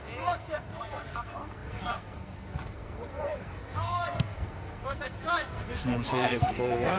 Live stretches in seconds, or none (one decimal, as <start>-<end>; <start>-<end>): none